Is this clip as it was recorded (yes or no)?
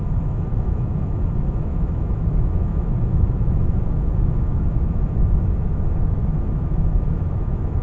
no